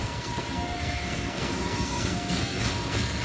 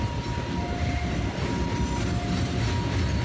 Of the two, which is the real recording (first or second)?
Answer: second